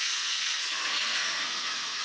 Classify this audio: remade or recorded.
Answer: remade